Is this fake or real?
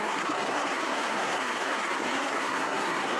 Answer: fake